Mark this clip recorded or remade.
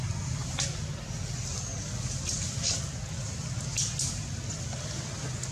recorded